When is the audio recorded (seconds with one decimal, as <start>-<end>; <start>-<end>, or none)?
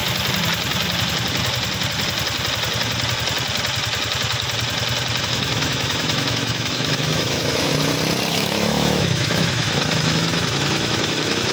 0.0-5.2; 7.7-8.3